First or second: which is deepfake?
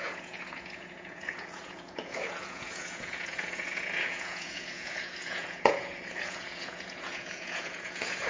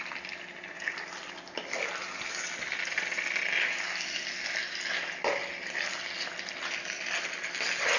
first